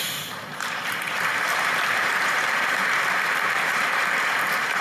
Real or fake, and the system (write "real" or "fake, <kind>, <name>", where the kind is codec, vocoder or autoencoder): fake, vocoder, BigVGAN v2